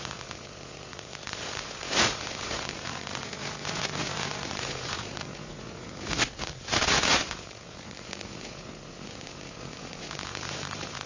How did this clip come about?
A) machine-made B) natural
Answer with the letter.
A